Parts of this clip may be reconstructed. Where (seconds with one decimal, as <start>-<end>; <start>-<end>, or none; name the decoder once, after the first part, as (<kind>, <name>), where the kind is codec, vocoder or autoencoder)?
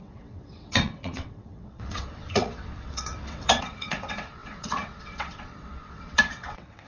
0.0-6.9 (vocoder, WaveNeXt)